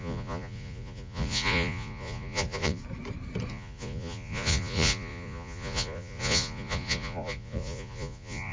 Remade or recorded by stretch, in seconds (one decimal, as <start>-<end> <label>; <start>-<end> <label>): 0.0-2.8 remade; 2.8-3.5 recorded; 3.5-8.5 remade

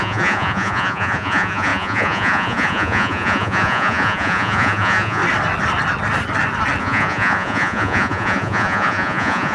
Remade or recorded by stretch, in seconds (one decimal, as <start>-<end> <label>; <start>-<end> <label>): 0.0-5.2 remade; 5.2-6.8 recorded; 6.8-9.5 remade